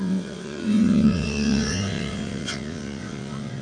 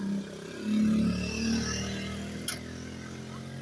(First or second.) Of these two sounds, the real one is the second